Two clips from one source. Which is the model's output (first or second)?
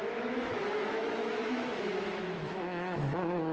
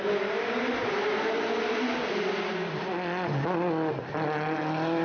first